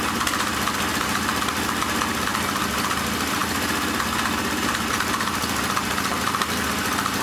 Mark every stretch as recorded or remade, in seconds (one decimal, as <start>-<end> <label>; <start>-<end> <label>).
0.0-7.2 recorded